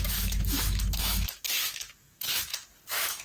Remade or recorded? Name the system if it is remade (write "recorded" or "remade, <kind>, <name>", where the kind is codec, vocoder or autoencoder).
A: remade, autoencoder, DAC-VAE